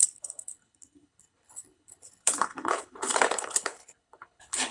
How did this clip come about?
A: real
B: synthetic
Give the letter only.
B